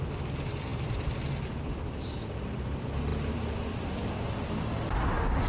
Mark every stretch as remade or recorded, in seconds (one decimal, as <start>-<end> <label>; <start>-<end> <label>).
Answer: 0.0-5.5 recorded